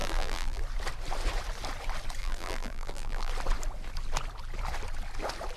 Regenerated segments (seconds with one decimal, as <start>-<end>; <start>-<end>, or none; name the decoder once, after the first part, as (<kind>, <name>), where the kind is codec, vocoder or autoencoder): 0.0-0.6 (vocoder, BigVGAN v2); 2.2-3.3